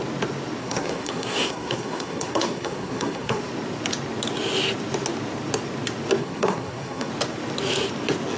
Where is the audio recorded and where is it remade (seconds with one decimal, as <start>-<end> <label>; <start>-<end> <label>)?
0.0-0.6 recorded; 0.6-3.4 remade; 3.4-6.2 recorded; 6.2-7.1 remade; 7.1-8.4 recorded